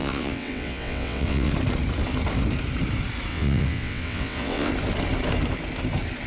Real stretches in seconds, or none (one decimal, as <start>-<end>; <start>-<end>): 1.5-3.3; 4.7-6.3